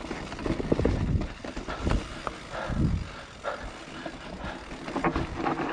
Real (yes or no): yes